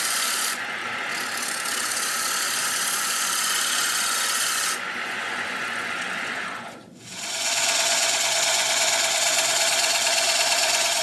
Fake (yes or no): yes